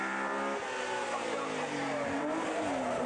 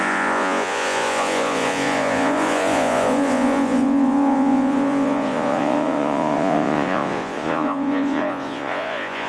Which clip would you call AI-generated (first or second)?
second